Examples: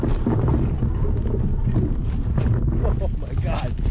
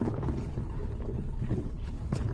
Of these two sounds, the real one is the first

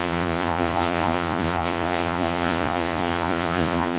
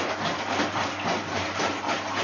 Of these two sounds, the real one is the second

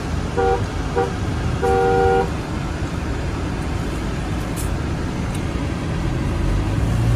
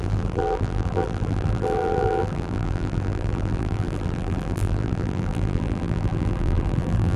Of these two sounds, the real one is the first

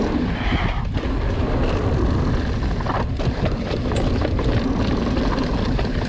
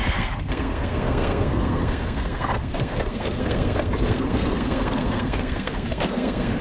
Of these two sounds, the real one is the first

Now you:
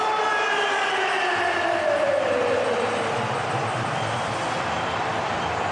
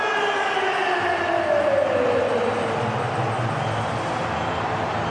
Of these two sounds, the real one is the second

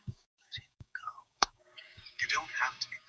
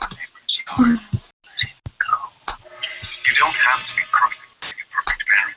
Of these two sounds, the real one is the second